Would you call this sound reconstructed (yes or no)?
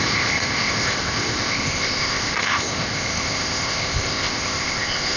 yes